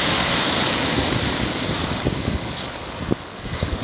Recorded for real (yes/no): no